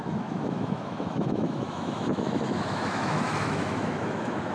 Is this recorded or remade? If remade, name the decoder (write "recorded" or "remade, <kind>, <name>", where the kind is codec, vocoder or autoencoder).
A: remade, autoencoder, DAC-VAE